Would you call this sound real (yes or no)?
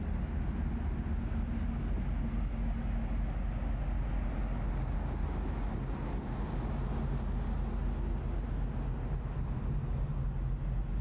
yes